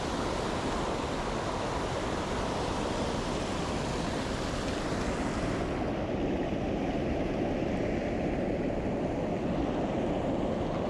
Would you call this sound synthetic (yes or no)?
no